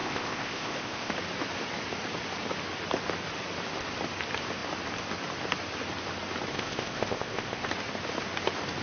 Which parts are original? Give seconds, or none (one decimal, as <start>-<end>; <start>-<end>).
1.1-6.5; 7.7-8.8